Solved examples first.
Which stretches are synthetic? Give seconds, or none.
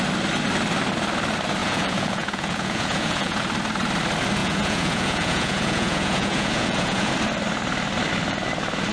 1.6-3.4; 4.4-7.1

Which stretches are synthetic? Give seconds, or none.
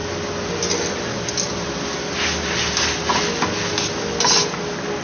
none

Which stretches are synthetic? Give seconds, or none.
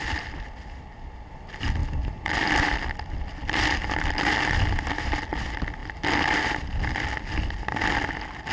none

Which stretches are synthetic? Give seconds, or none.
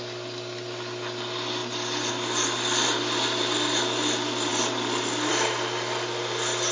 none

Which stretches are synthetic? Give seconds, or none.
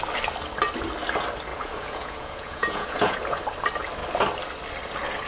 1.5-3.4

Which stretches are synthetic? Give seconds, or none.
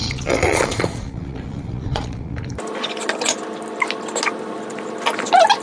0.0-2.5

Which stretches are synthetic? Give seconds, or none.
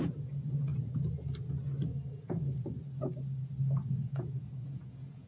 0.0-0.7; 3.9-5.3